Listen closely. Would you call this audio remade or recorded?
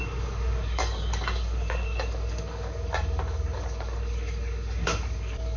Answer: remade